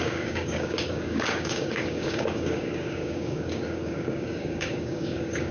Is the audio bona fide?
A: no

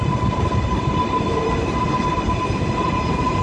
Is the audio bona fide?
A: no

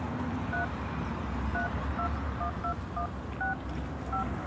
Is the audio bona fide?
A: yes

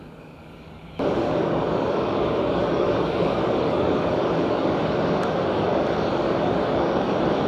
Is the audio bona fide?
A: no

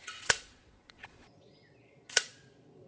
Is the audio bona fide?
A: no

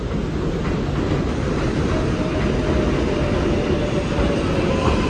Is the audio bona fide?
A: yes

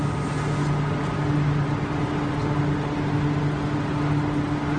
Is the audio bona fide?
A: yes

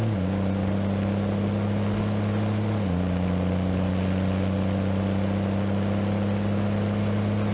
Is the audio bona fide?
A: yes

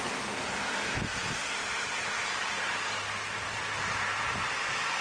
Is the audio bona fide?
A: yes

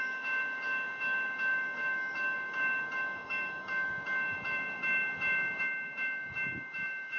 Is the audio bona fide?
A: no